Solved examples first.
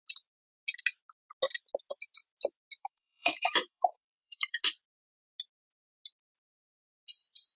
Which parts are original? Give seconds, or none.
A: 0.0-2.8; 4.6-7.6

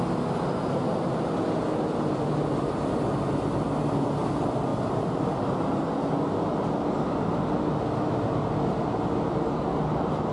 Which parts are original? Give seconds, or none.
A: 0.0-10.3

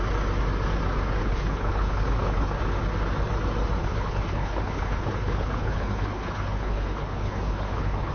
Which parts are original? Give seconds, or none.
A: 0.0-1.2; 2.6-3.8

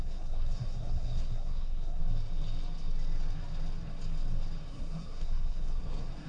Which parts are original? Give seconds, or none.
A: 2.0-4.7